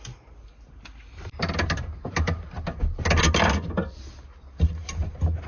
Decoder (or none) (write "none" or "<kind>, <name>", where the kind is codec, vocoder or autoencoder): none